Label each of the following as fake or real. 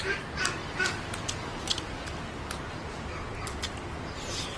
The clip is real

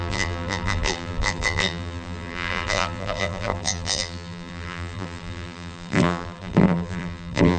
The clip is fake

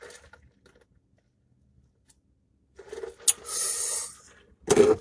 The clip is real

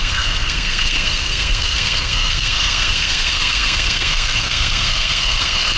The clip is fake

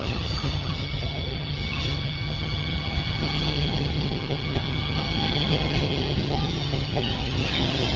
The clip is fake